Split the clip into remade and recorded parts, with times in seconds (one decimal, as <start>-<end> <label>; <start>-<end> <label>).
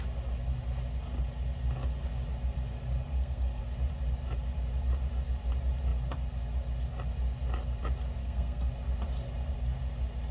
0.0-3.1 recorded; 3.1-3.6 remade; 3.6-8.2 recorded; 8.2-8.7 remade; 8.7-10.3 recorded